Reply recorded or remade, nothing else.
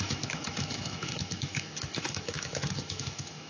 remade